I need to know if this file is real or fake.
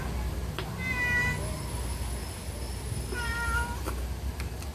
real